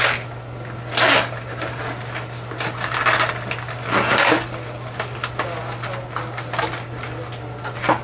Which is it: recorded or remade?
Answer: recorded